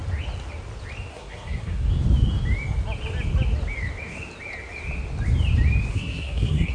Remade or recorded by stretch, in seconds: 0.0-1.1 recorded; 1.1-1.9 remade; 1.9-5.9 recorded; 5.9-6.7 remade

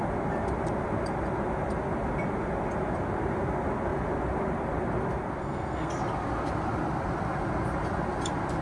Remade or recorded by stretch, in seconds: 0.0-5.4 recorded; 5.4-5.9 remade; 5.9-8.6 recorded

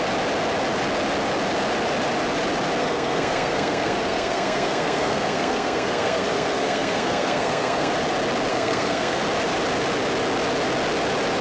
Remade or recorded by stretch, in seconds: 0.0-2.8 recorded; 2.8-7.9 remade; 7.9-8.5 recorded; 8.5-9.2 remade; 9.2-11.4 recorded

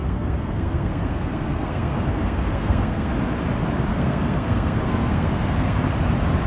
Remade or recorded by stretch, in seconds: 0.0-3.1 remade; 3.1-3.9 recorded; 3.9-5.8 remade; 5.8-6.5 recorded